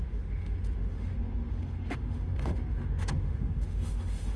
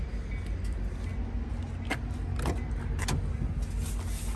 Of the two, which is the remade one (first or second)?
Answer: first